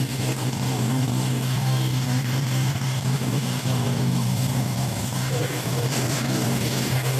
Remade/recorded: remade